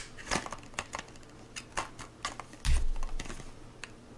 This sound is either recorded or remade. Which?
recorded